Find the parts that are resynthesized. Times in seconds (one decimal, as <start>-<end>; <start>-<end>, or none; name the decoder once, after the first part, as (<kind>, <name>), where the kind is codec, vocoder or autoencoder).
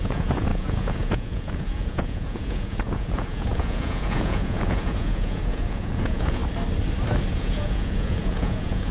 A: 0.0-6.4 (vocoder, Vocos); 7.3-8.9